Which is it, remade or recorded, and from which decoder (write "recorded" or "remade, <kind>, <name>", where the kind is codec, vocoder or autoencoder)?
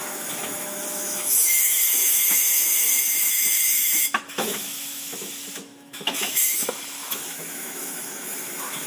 remade, autoencoder, DAC-VAE